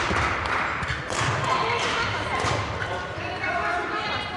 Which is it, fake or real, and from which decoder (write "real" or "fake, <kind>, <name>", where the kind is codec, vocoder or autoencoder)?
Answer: real